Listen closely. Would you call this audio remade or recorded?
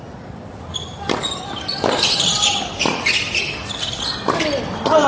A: recorded